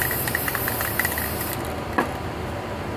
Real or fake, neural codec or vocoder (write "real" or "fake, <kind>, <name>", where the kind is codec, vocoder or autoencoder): real